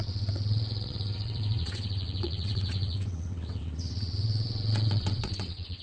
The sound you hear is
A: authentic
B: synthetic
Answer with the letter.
B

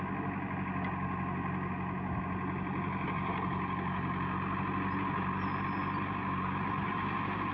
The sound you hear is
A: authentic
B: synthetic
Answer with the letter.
A